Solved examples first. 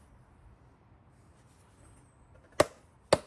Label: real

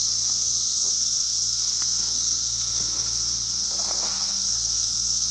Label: fake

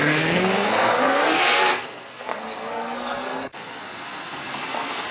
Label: fake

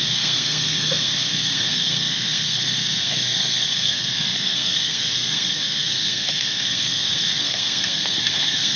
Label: fake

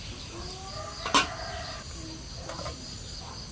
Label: real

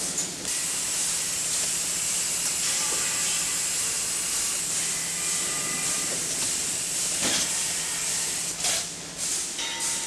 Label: real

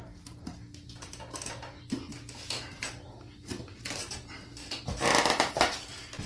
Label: real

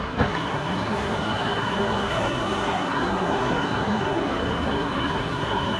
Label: fake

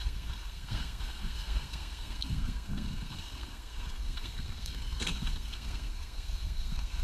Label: fake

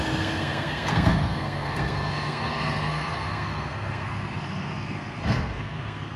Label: fake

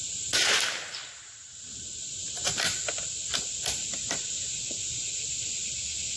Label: real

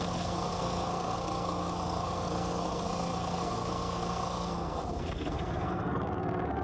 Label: fake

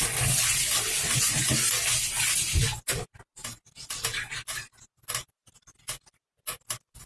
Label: real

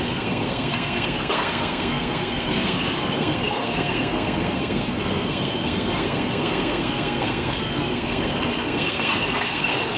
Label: fake